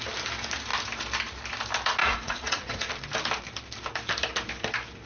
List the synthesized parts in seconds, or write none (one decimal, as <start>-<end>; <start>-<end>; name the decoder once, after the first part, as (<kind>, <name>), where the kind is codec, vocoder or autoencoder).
2.0-2.9 (vocoder, Vocos)